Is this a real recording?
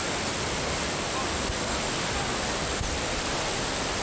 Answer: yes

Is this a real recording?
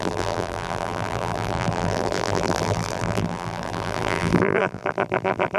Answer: no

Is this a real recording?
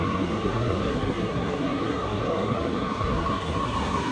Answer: no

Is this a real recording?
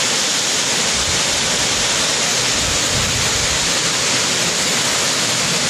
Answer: yes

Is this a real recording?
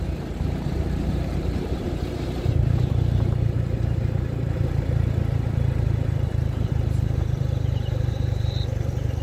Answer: no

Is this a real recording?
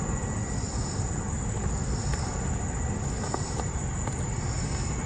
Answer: yes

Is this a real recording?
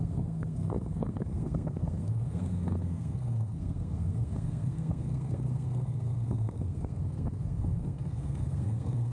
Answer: no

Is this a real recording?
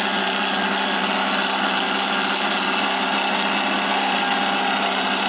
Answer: yes